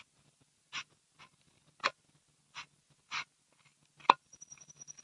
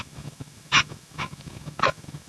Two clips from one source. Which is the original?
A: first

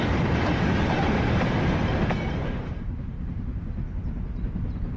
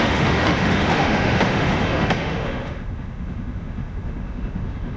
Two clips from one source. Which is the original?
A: first